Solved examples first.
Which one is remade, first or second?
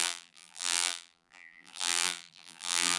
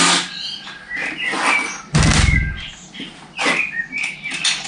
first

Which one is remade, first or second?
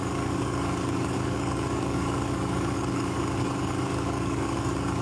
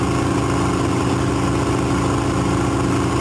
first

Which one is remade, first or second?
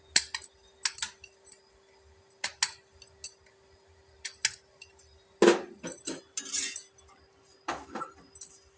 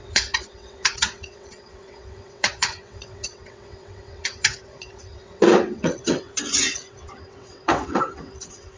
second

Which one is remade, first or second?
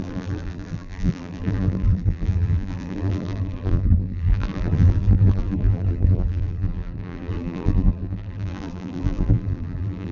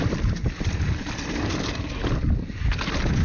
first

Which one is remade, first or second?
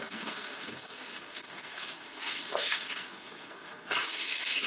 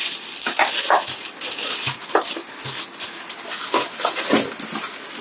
first